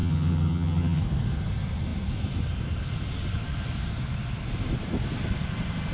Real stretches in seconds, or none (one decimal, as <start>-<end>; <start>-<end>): 1.0-5.9